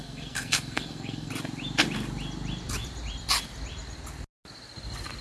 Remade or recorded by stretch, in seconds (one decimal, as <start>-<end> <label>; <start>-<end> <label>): 0.0-1.3 remade; 1.3-5.2 recorded